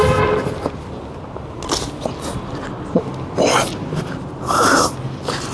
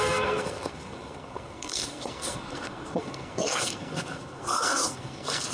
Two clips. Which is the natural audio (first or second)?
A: first